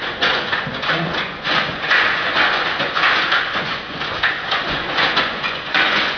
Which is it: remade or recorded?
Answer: remade